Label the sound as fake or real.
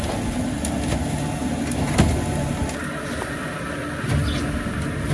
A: real